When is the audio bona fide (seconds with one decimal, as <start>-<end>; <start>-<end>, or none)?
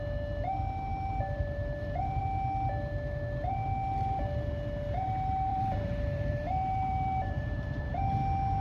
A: 0.0-0.9; 2.2-5.5; 7.8-8.6